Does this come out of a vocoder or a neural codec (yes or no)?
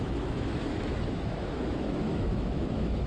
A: yes